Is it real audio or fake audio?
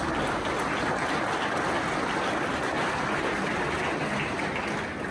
real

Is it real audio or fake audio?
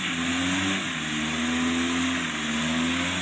real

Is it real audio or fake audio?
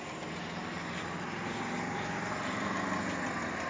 real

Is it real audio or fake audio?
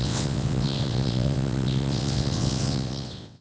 fake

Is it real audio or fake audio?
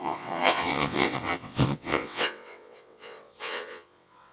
fake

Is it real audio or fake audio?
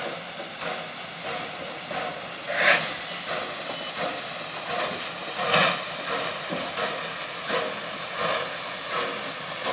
real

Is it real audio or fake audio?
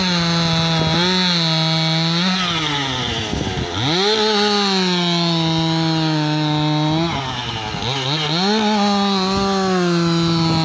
real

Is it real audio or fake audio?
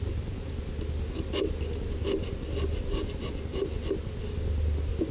real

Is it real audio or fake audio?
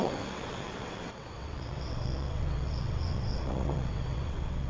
fake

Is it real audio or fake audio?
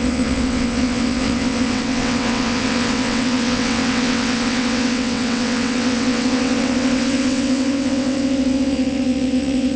fake